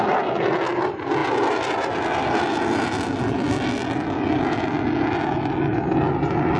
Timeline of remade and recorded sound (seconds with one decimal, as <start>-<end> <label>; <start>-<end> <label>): 0.0-6.6 recorded